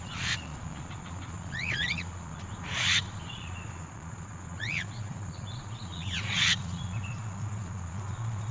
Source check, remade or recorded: remade